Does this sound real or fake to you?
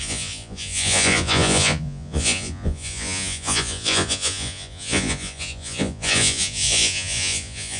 fake